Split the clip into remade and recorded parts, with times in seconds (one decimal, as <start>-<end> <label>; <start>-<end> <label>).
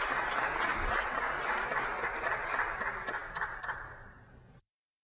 0.0-3.2 recorded; 3.2-4.4 remade; 4.4-5.0 recorded